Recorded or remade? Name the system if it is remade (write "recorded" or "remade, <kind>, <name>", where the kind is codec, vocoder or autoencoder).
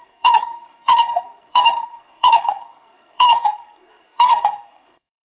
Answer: remade, codec, SNAC